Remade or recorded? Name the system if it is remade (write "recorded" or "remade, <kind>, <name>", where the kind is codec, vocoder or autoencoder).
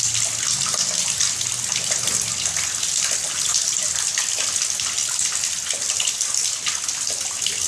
recorded